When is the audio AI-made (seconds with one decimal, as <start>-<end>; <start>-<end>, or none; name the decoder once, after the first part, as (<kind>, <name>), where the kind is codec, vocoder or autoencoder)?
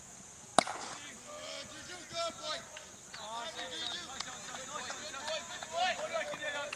0.0-0.5 (vocoder, Vocos); 4.1-5.0; 5.5-6.8